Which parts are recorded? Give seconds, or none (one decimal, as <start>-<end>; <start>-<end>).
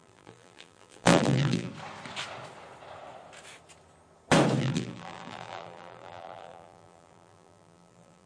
1.7-4.6